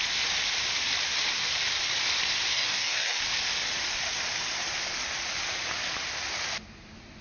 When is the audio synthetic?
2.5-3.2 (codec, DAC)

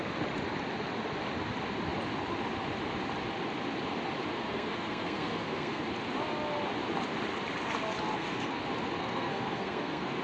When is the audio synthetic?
4.3-5.8 (codec, SNAC); 8.1-8.6; 9.0-10.2